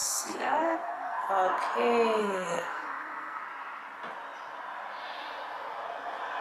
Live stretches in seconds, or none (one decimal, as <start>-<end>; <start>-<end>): 1.3-2.2; 3.4-6.4